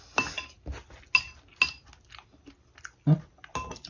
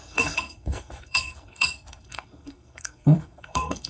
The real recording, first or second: first